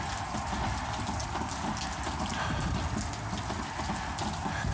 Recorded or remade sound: recorded